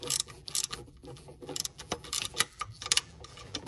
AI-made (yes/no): yes